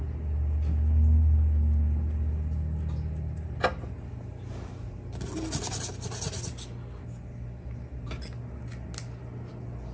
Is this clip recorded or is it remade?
recorded